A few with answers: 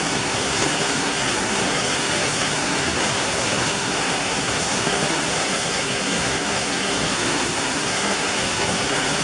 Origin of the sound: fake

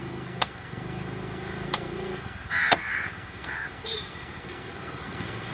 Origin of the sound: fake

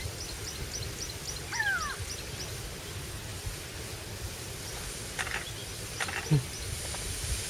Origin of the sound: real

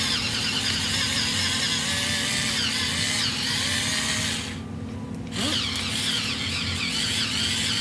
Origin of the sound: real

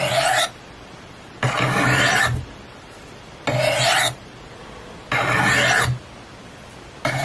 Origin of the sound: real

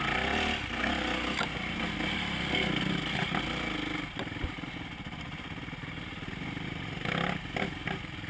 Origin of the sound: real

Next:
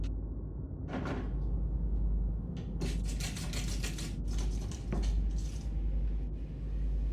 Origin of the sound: real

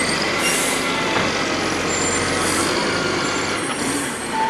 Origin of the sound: fake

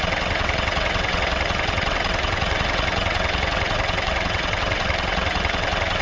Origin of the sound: fake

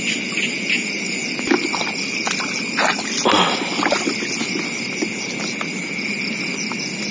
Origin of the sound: real